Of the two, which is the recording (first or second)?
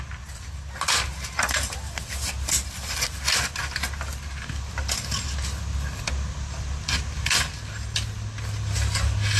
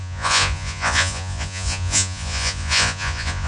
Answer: first